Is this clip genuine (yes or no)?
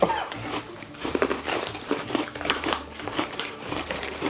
no